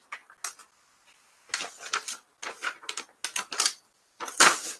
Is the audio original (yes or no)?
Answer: yes